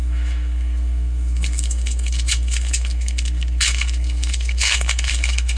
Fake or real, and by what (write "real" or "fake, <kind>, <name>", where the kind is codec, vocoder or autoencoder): fake, codec, SNAC